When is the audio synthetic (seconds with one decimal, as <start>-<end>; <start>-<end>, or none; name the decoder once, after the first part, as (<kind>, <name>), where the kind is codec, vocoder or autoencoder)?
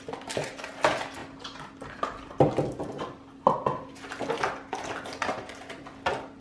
none